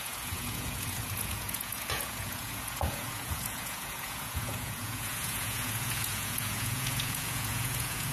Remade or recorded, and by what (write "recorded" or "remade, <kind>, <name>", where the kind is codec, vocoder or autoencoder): remade, vocoder, Vocos